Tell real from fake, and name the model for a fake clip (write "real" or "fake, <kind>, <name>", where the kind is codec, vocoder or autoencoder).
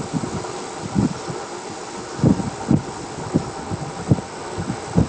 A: real